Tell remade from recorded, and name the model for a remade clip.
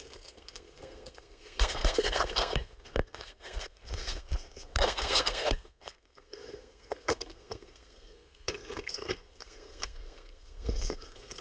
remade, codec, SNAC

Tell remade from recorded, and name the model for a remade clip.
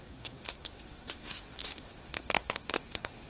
remade, codec, SNAC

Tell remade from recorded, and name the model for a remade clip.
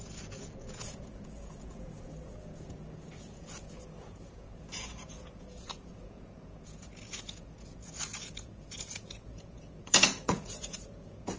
remade, vocoder, Vocos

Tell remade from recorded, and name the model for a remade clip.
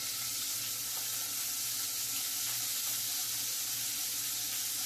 recorded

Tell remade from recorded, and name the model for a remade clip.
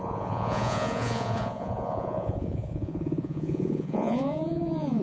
remade, vocoder, Vocos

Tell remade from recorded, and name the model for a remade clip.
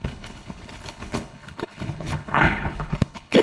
remade, codec, HILCodec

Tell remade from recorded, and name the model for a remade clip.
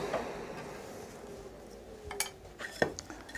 recorded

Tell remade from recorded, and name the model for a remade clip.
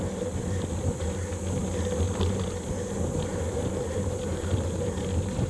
recorded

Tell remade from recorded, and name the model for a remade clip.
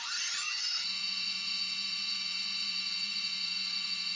remade, vocoder, Vocos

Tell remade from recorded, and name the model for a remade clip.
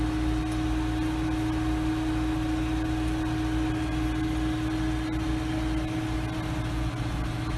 recorded